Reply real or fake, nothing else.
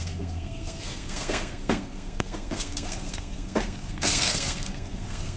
fake